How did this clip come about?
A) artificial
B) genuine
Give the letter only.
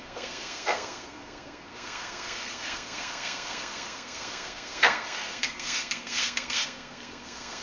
A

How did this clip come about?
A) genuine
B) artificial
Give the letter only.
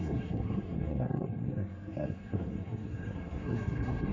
B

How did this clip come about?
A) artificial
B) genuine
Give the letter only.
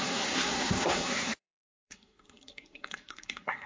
A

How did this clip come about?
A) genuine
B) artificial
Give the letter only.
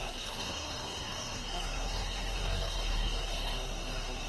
B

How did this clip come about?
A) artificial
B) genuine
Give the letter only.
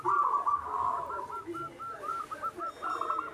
B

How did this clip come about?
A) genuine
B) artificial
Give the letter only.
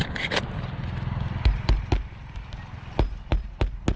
A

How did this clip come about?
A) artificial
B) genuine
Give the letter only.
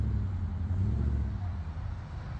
B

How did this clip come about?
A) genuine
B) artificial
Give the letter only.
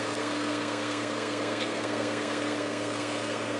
B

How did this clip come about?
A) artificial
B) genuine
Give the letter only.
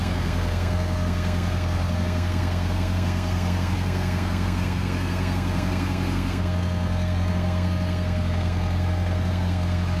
A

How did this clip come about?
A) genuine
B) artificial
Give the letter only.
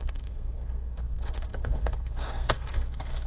B